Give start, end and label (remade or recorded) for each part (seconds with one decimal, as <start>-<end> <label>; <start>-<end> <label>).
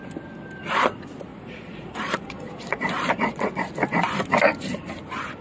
0.0-1.3 recorded; 1.3-3.7 remade; 3.7-5.4 recorded